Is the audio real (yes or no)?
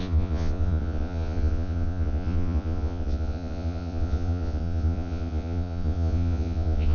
no